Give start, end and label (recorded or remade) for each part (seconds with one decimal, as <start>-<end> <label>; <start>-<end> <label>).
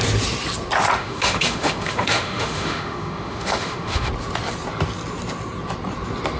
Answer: 0.0-1.0 recorded; 1.0-4.1 remade; 4.1-6.4 recorded